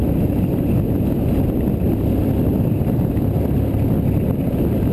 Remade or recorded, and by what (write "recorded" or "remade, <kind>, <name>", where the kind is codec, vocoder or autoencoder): recorded